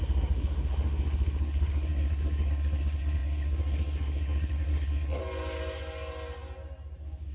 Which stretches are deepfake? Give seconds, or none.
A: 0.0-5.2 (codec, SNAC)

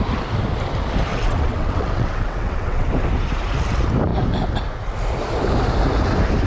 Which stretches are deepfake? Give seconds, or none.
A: 1.1-2.9 (vocoder, WaveNeXt)

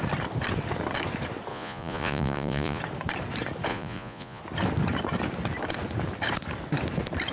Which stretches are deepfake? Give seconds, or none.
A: 1.5-2.8 (vocoder, Vocos); 3.7-4.4

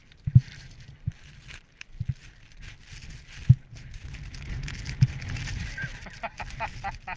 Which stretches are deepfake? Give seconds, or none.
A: none

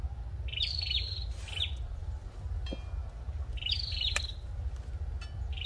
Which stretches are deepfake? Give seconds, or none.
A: none